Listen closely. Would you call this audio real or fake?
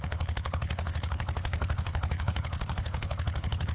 fake